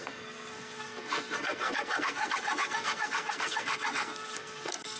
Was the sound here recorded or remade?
remade